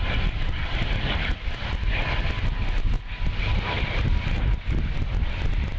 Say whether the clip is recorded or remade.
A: recorded